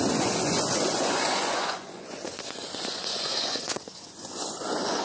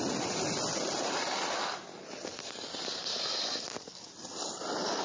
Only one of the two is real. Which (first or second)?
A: second